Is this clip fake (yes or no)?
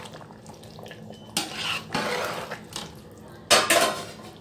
no